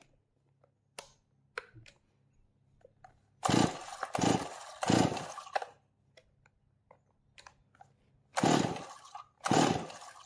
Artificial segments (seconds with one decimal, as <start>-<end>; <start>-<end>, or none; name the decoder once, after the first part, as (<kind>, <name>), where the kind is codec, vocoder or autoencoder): none